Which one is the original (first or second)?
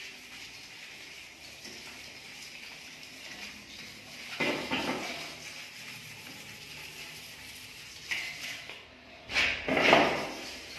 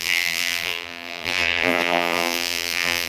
first